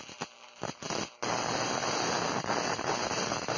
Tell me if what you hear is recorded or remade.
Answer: recorded